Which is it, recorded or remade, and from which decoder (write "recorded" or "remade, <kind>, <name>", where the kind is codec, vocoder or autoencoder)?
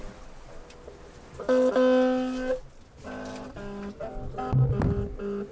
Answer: recorded